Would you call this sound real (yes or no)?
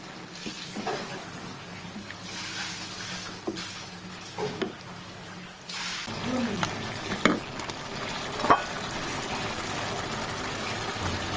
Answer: yes